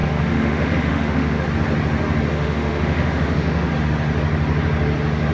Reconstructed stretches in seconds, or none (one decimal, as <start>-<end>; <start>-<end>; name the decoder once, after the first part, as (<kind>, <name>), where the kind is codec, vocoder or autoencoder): 0.0-1.5 (autoencoder, DAC-VAE); 2.3-3.7